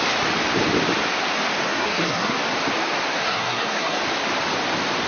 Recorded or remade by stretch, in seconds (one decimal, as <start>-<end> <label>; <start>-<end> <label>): 0.0-1.7 recorded; 1.7-2.4 remade; 2.4-3.2 recorded; 3.2-4.0 remade; 4.0-5.1 recorded